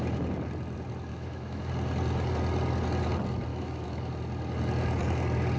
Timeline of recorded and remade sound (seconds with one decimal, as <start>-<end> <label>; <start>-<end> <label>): 0.0-1.1 recorded; 1.1-1.7 remade; 1.7-3.5 recorded; 3.5-4.1 remade; 4.1-5.6 recorded